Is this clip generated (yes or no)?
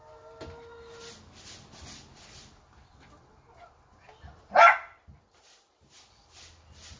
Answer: no